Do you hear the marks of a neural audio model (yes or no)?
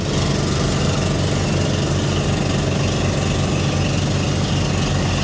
no